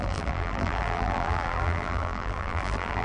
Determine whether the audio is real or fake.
fake